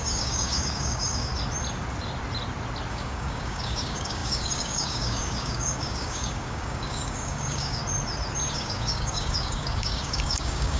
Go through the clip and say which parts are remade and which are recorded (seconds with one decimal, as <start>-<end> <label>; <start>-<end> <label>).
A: 0.0-1.3 remade; 1.3-2.9 recorded; 2.9-7.8 remade; 7.8-8.5 recorded; 8.5-10.8 remade